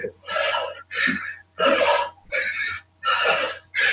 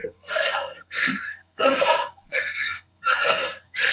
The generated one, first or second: second